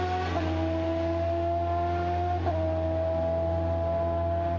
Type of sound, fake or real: real